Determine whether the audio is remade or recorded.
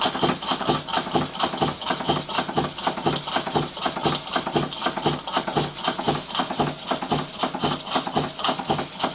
recorded